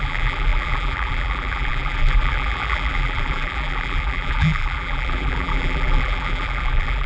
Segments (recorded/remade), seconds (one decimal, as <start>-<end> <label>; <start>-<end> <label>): 0.0-7.1 remade